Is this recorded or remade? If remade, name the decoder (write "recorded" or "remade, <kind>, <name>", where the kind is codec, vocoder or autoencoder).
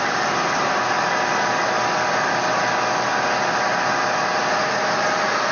recorded